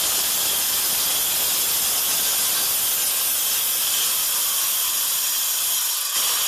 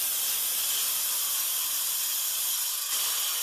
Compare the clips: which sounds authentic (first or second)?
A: first